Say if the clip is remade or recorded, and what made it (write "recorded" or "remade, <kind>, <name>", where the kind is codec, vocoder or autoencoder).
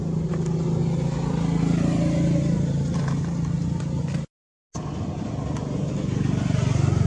recorded